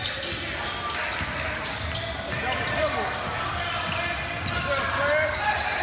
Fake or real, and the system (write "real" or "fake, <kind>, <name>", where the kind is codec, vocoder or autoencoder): real